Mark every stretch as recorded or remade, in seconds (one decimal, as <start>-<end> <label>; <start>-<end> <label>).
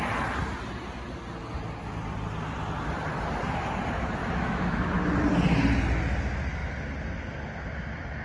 0.0-4.2 recorded; 4.2-4.9 remade; 4.9-8.2 recorded